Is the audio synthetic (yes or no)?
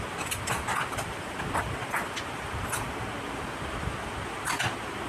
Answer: no